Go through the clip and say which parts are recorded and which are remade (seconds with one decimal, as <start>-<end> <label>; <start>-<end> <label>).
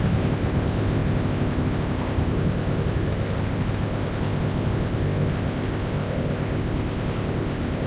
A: 0.0-7.9 remade